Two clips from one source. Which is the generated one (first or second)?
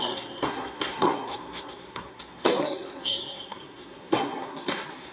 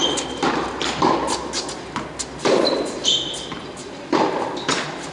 first